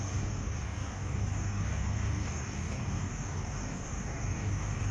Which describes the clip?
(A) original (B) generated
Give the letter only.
B